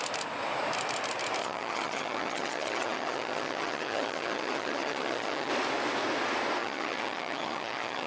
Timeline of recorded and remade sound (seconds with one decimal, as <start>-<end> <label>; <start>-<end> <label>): 0.0-1.4 recorded; 1.4-5.5 remade; 5.5-6.6 recorded; 6.6-8.1 remade